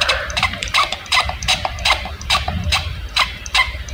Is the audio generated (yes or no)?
yes